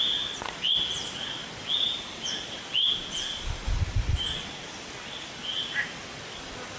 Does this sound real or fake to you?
real